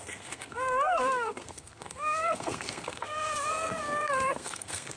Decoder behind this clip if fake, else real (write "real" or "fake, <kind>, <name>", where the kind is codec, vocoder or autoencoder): fake, codec, SNAC